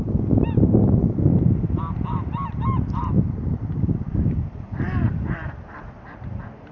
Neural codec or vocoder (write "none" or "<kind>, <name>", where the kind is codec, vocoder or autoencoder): vocoder, BigVGAN v2